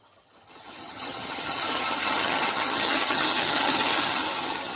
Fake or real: fake